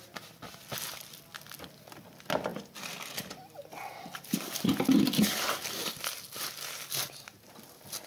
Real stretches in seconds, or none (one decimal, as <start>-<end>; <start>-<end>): 0.0-8.1